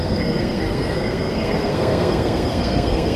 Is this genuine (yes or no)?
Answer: no